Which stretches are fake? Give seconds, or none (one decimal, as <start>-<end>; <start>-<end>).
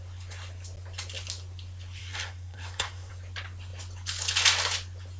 2.0-3.1